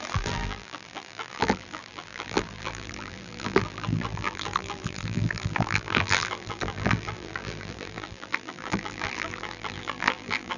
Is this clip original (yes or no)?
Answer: no